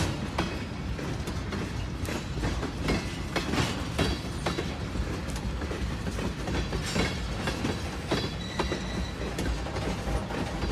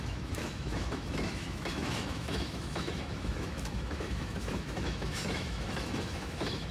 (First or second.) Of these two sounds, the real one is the first